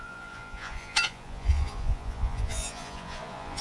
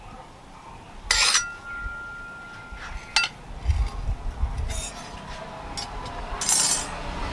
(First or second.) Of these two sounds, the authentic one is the second